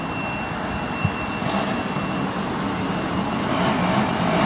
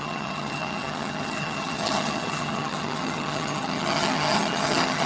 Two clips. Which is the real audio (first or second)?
first